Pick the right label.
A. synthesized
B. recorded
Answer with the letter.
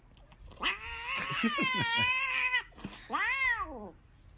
B